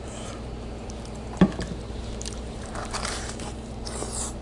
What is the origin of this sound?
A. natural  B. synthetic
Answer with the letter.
B